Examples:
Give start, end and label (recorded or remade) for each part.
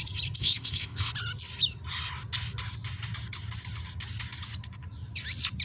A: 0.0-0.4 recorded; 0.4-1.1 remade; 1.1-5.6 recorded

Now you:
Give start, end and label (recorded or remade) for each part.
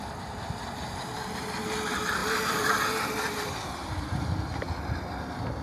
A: 0.0-2.2 recorded; 2.2-2.8 remade; 2.8-5.6 recorded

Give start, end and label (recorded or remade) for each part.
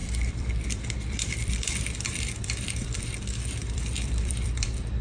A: 0.0-3.0 remade; 3.0-3.6 recorded; 3.6-5.0 remade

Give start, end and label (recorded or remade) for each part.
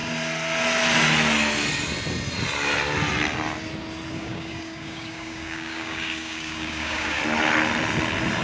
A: 0.0-4.1 recorded; 4.1-7.2 remade; 7.2-8.4 recorded